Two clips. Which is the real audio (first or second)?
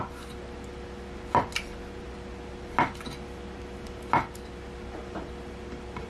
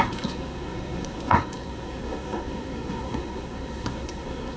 first